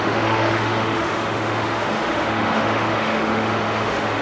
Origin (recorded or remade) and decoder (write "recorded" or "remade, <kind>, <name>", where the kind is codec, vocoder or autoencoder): remade, autoencoder, DAC-VAE